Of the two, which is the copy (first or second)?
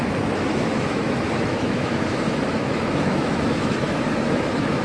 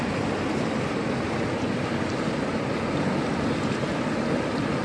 first